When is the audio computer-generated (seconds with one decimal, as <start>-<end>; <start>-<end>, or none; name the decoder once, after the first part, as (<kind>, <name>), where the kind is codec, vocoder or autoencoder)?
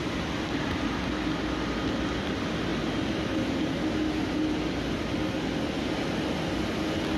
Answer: none